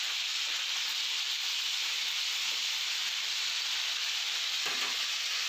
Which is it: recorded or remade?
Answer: recorded